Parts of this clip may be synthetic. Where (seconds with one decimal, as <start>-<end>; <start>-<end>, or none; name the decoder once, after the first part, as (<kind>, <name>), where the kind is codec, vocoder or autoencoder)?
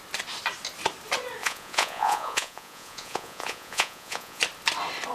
1.4-4.4 (vocoder, Vocos)